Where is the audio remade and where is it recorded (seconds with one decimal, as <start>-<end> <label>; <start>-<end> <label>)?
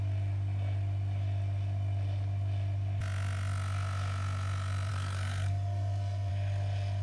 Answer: 0.0-4.9 recorded; 4.9-6.3 remade; 6.3-7.0 recorded